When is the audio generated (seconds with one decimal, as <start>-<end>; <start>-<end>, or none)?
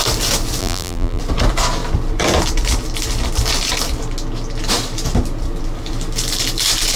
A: 0.6-1.2